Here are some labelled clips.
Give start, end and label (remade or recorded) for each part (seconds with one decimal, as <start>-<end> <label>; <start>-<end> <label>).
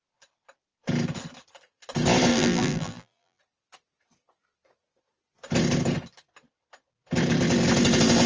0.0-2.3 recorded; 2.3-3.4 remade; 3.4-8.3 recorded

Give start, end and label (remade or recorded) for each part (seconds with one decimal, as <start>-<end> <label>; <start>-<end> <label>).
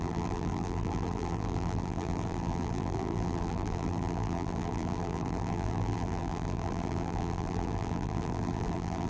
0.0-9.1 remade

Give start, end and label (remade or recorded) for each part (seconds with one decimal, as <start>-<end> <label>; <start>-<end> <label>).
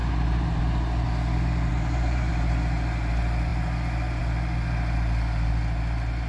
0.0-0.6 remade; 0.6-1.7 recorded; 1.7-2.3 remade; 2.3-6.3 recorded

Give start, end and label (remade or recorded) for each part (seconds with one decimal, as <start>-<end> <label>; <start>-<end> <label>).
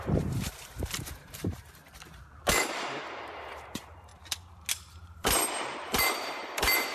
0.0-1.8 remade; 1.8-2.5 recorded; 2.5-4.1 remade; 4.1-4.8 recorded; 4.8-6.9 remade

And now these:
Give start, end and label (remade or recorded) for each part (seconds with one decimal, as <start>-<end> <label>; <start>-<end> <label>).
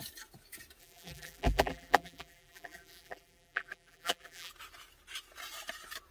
0.0-0.8 recorded; 0.8-4.5 remade; 4.5-6.1 recorded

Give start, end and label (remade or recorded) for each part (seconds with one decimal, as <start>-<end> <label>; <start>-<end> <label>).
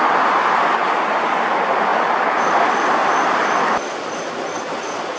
0.0-0.8 recorded; 0.8-1.4 remade; 1.4-1.9 recorded; 1.9-2.4 remade; 2.4-3.0 recorded; 3.0-3.6 remade; 3.6-5.2 recorded